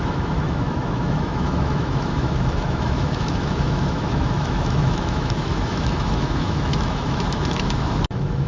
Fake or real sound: fake